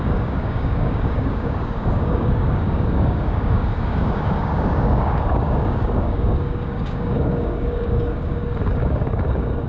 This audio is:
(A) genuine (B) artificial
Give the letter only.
B